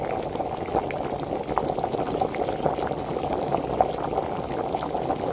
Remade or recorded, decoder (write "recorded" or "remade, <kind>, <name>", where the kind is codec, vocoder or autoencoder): recorded